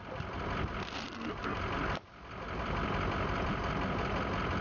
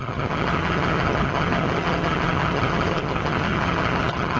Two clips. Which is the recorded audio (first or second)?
first